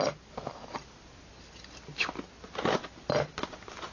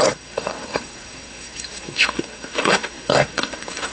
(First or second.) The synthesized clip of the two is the second